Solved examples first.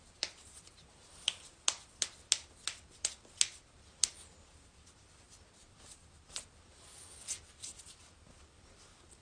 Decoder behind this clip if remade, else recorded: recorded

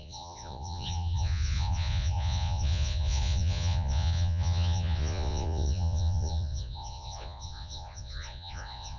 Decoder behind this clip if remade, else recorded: remade, vocoder, Vocos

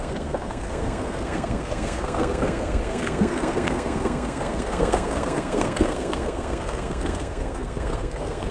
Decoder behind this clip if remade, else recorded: remade, codec, SNAC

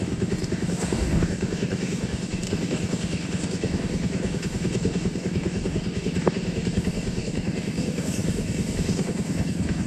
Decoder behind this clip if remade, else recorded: remade, codec, DAC